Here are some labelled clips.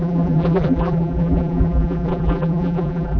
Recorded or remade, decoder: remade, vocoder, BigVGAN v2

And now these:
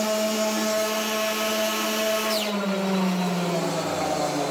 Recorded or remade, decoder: recorded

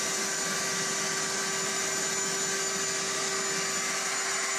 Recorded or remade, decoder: recorded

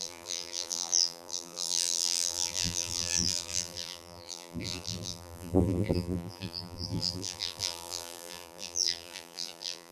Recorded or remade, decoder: remade, vocoder, BigVGAN v2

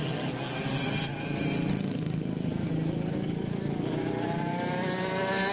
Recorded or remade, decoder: recorded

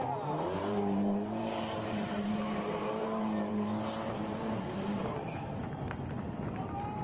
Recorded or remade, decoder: remade, vocoder, BigVGAN v2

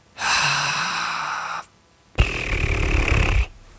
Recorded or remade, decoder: remade, vocoder, BigVGAN v2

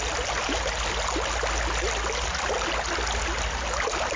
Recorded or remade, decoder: recorded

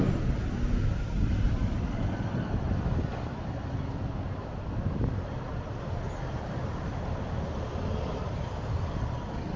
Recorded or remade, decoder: recorded